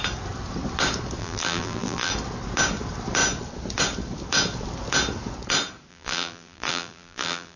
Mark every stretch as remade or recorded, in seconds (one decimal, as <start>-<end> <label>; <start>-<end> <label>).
0.0-1.2 recorded; 1.2-2.1 remade; 2.1-5.9 recorded; 5.9-7.6 remade